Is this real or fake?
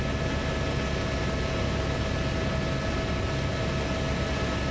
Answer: real